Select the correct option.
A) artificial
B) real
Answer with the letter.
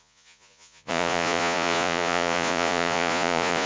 A